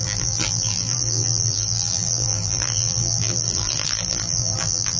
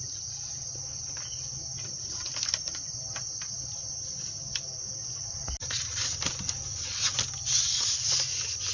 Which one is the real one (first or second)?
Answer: second